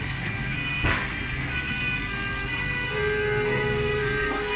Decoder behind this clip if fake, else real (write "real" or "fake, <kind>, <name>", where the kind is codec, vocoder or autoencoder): fake, codec, SNAC